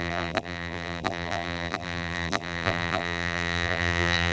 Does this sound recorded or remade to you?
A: remade